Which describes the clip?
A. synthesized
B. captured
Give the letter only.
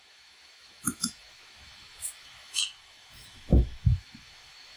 A